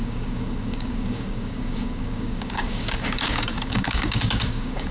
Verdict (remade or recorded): remade